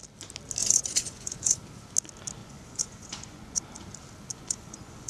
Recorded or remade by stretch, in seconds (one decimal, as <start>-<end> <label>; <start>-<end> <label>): 0.0-0.6 recorded; 0.6-1.6 remade; 1.6-2.4 recorded; 2.4-3.6 remade; 3.6-4.3 recorded; 4.3-5.1 remade